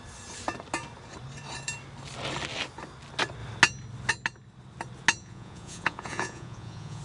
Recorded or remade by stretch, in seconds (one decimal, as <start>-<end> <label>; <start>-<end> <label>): 0.0-5.2 recorded; 5.2-7.0 remade